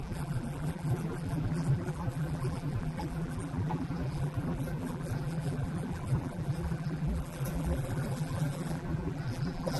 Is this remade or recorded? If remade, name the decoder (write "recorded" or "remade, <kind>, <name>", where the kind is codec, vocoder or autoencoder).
remade, vocoder, BigVGAN v2